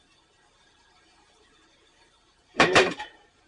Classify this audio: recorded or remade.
remade